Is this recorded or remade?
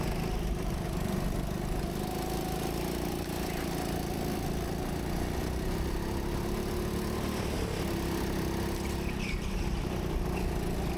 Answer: recorded